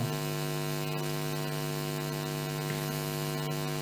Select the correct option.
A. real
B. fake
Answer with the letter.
A